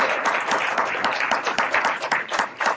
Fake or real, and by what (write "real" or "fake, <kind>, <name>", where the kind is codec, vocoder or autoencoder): fake, vocoder, BigVGAN v2